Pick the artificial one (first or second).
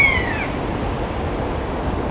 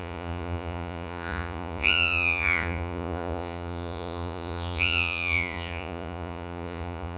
second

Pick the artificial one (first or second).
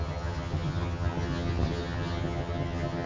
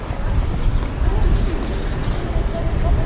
first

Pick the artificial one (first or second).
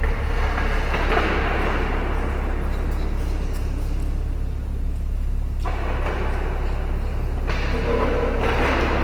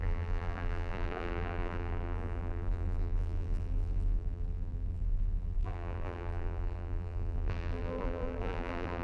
second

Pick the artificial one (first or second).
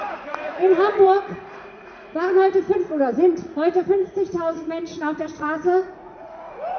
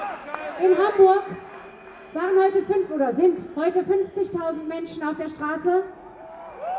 first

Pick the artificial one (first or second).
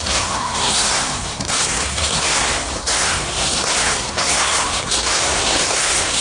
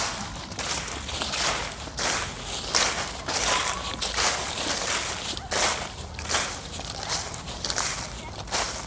first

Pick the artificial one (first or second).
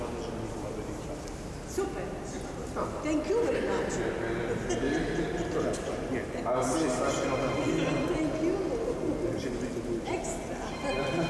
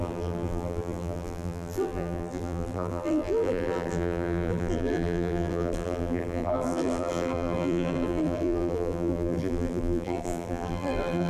second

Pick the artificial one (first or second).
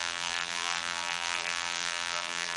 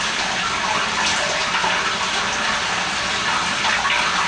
first